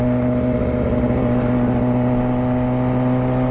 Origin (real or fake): real